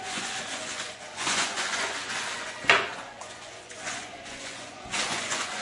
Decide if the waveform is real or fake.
fake